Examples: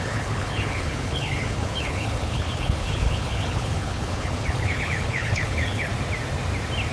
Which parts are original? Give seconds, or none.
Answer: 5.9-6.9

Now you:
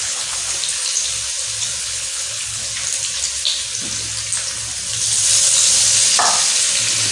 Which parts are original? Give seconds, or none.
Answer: 0.4-1.8; 2.6-7.1

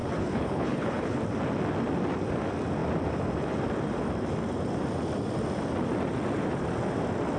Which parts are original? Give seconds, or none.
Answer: 1.2-7.4

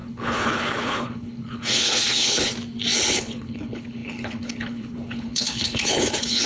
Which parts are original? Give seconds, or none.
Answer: 2.5-3.1

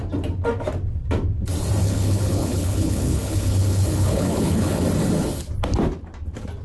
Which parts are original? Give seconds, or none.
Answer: 0.0-1.8; 4.8-6.6

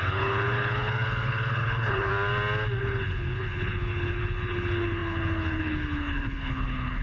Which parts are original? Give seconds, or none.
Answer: 2.1-2.8